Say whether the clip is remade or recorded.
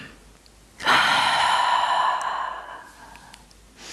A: recorded